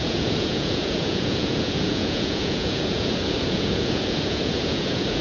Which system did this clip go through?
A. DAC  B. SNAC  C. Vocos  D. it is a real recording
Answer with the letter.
C